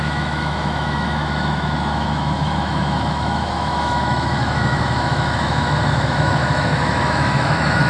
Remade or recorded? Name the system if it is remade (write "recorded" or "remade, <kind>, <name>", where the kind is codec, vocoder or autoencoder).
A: remade, autoencoder, DAC-VAE